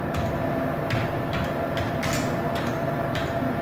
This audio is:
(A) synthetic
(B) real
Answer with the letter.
B